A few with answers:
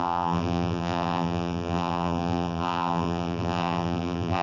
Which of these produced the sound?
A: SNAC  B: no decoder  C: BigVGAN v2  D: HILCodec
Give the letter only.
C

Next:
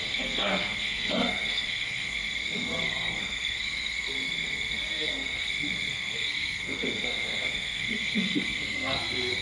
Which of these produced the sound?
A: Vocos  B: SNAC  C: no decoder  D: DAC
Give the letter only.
B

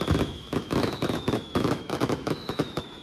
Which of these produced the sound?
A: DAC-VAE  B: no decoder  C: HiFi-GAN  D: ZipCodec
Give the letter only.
A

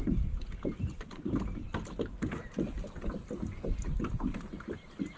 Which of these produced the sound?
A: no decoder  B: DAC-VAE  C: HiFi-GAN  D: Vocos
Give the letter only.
A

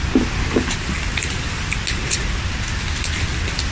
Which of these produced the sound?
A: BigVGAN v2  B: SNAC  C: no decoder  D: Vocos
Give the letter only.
C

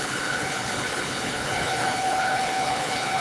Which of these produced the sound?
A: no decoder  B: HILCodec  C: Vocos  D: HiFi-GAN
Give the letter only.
B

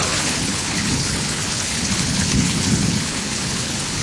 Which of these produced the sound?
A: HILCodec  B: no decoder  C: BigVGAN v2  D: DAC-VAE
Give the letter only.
A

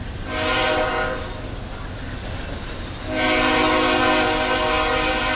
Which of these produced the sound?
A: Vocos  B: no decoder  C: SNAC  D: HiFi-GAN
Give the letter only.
B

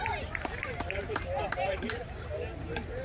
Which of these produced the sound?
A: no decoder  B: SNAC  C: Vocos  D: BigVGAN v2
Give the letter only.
D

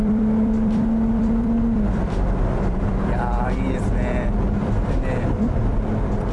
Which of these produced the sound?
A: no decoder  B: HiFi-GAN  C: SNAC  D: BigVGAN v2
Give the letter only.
D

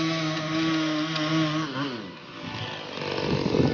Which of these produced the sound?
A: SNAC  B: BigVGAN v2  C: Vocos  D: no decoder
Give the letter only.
D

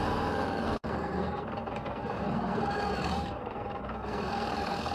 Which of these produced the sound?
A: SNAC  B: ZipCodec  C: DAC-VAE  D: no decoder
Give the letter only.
A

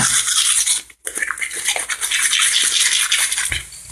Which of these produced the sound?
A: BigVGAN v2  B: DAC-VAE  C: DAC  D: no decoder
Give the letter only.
D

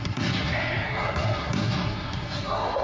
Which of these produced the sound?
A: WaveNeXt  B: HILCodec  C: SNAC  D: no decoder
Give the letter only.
C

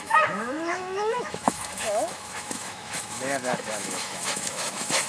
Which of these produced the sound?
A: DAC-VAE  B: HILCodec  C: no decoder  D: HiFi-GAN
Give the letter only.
A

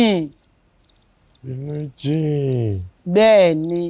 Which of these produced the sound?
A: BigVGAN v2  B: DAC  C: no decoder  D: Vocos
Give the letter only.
C